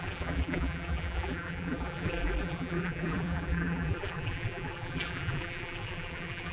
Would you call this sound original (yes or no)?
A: no